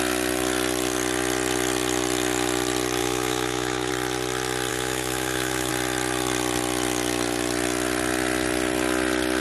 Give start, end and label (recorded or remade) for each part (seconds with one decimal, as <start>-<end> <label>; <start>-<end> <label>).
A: 0.0-3.0 recorded; 3.0-3.9 remade; 3.9-4.7 recorded; 4.7-5.7 remade; 5.7-9.4 recorded